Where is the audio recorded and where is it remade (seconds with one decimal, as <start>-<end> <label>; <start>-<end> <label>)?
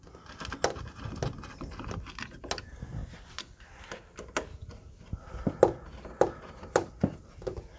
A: 0.0-7.8 recorded